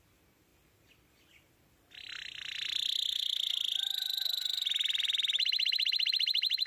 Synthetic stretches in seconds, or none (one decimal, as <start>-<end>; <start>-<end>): none